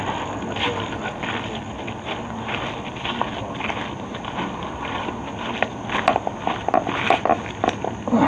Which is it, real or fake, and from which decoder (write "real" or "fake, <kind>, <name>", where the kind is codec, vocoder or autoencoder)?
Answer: real